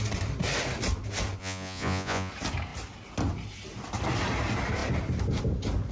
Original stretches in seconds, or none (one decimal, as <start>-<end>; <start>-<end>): 0.0-1.4; 2.3-5.9

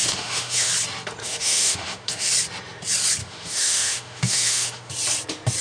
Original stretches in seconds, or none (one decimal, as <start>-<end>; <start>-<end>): 0.7-1.2; 2.3-3.2; 4.9-5.6

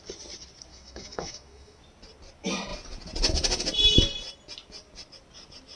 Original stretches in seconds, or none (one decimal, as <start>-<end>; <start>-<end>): 0.0-0.7; 1.8-5.8

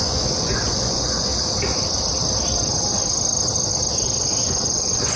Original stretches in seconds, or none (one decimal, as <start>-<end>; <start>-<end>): 1.3-4.4

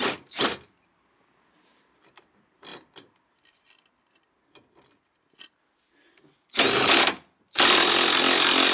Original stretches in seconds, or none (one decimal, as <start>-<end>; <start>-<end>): 0.0-8.7

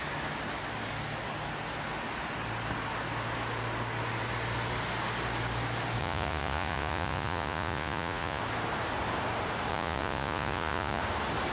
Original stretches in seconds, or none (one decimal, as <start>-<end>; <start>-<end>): 0.0-6.0; 8.4-9.7; 11.0-11.5

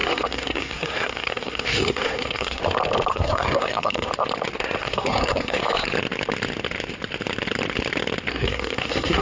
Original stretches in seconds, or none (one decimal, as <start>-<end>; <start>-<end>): 2.6-3.1; 4.1-4.8; 5.6-8.3